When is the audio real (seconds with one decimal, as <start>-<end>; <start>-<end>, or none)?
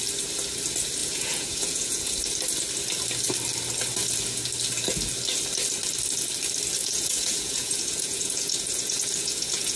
0.0-1.0; 2.2-6.8